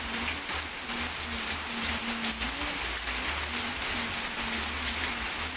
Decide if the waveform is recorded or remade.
recorded